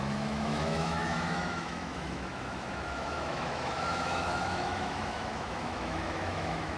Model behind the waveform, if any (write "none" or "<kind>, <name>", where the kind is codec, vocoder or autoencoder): autoencoder, DAC-VAE